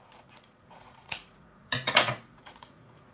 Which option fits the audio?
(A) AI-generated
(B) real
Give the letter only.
A